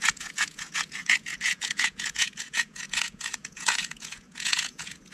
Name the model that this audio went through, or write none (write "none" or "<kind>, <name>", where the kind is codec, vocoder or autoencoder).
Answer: vocoder, Vocos